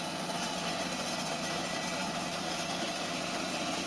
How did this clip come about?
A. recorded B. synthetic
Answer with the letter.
B